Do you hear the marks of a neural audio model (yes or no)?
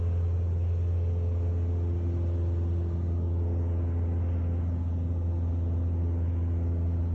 no